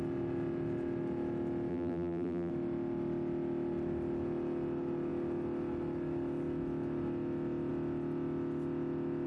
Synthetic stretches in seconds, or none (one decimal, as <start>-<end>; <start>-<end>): 1.7-2.5